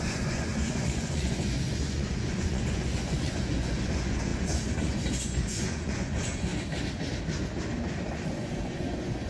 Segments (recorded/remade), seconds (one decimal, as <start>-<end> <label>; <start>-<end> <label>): 0.0-6.5 remade; 6.5-8.3 recorded; 8.3-9.3 remade